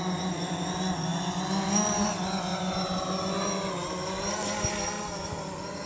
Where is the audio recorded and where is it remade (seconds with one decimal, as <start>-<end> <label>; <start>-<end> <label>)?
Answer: 0.0-2.5 recorded; 2.5-3.0 remade; 3.0-5.9 recorded